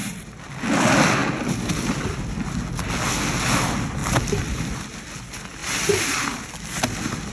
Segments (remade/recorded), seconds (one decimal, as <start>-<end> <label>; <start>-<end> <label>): 0.0-4.0 recorded; 4.0-4.7 remade; 4.7-5.6 recorded; 5.6-6.4 remade; 6.4-7.3 recorded